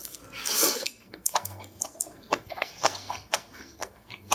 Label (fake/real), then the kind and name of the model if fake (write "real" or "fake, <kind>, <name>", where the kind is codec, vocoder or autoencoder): fake, codec, SNAC